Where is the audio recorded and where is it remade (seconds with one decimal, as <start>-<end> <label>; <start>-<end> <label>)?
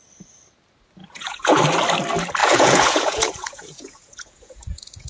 0.0-1.0 recorded; 1.0-1.6 remade; 1.6-2.4 recorded; 2.4-5.1 remade